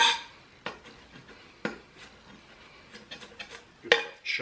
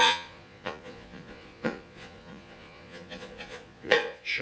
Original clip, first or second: first